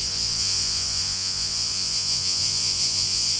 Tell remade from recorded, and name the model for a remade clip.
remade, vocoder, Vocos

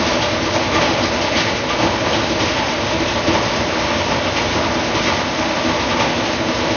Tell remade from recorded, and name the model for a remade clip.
recorded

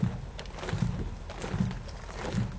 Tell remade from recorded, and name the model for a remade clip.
recorded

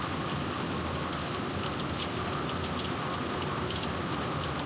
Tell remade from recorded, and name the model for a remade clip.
recorded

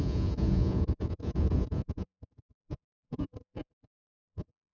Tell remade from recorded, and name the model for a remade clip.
remade, vocoder, Vocos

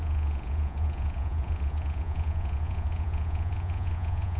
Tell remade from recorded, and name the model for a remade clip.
remade, vocoder, Vocos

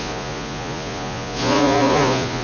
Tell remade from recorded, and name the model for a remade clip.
remade, vocoder, Vocos